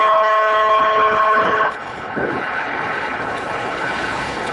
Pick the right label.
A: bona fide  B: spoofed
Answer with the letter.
B